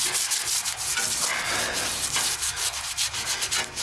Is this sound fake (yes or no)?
no